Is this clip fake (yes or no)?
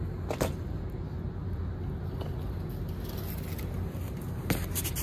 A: no